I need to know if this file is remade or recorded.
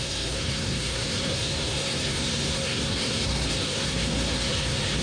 remade